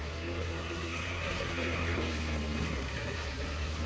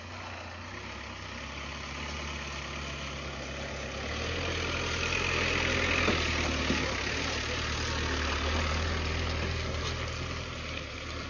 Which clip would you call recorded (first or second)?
second